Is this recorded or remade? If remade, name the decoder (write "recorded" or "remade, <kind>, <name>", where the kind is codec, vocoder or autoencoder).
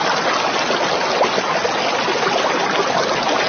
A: recorded